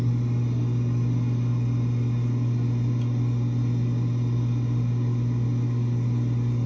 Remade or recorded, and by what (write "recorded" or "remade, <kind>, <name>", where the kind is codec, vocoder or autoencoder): recorded